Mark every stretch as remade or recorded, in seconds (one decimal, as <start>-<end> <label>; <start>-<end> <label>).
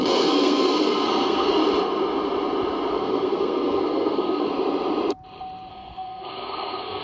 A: 0.0-1.6 remade; 1.6-2.9 recorded; 2.9-4.5 remade; 4.5-5.7 recorded; 5.7-7.0 remade